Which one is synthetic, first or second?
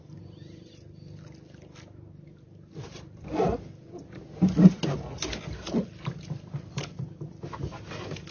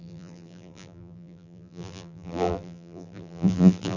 second